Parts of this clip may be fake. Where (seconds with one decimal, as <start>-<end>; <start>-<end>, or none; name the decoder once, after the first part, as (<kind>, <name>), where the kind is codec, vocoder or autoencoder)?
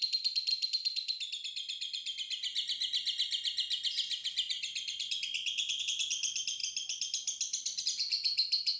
none